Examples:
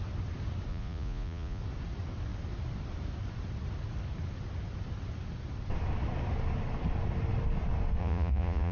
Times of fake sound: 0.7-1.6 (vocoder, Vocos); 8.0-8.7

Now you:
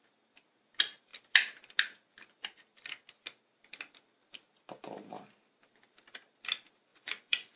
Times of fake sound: 6.9-7.6 (vocoder, Vocos)